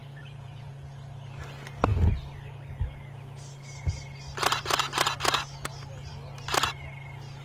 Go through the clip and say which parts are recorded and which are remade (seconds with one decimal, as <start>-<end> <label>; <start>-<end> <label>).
0.0-0.7 remade; 0.7-7.4 recorded